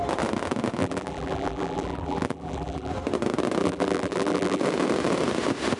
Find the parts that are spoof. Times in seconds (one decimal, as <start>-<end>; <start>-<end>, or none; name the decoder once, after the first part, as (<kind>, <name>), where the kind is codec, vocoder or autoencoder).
0.8-2.9 (vocoder, BigVGAN v2); 3.6-4.6